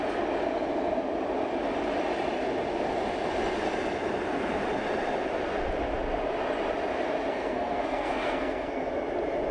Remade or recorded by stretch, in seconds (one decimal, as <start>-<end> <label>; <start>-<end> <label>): 0.0-7.3 recorded; 7.3-8.9 remade; 8.9-9.5 recorded